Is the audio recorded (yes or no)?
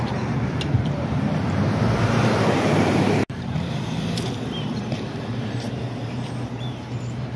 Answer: no